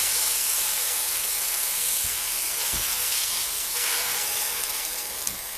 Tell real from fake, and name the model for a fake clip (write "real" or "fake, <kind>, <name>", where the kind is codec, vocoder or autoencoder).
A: fake, codec, SNAC